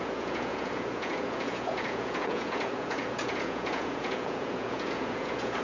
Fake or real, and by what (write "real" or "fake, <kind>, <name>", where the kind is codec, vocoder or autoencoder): fake, vocoder, Vocos